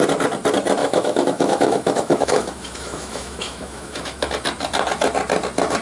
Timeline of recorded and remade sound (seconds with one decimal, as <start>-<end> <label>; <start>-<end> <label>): 0.0-0.8 recorded; 0.8-4.3 remade; 4.3-5.8 recorded